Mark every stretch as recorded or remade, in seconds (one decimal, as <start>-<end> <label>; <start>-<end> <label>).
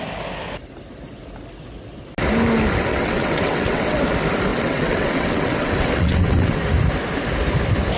0.0-2.9 recorded; 2.9-4.0 remade; 4.0-4.5 recorded; 4.5-6.6 remade; 6.6-8.0 recorded